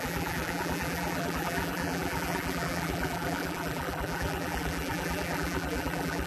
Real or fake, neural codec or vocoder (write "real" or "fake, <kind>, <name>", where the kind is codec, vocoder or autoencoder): fake, vocoder, BigVGAN v2